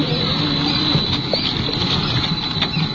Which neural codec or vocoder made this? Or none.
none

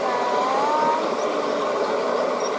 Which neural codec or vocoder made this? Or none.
none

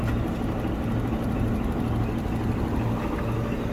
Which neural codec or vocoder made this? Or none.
none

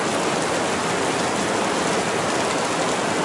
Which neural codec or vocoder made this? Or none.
none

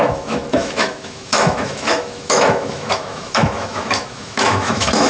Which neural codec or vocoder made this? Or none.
autoencoder, DAC-VAE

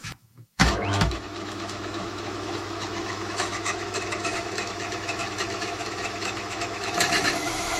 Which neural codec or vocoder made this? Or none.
autoencoder, DAC-VAE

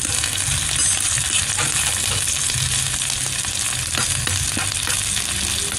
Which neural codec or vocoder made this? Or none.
none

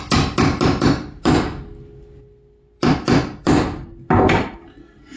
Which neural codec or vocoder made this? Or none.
none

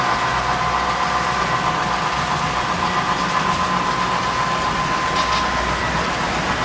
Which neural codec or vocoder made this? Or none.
none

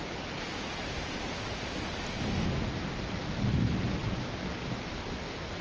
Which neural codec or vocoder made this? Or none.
none